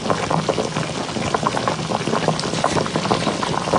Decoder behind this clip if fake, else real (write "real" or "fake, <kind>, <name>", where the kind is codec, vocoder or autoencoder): real